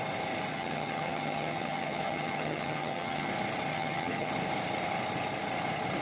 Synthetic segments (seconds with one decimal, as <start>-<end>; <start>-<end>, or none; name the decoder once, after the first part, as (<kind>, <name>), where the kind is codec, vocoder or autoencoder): 0.5-3.3 (vocoder, HiFi-GAN); 3.7-4.3